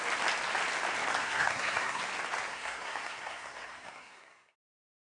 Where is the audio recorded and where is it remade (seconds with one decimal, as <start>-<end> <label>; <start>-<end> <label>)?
0.0-1.2 recorded; 1.2-2.0 remade; 2.0-2.5 recorded; 2.5-5.1 remade